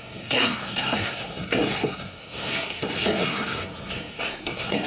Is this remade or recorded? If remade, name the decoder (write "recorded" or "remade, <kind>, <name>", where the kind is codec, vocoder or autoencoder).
remade, codec, SNAC